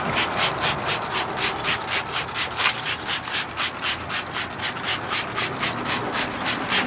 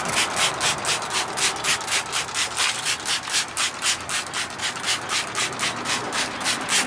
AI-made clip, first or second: first